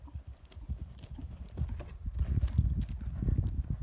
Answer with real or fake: real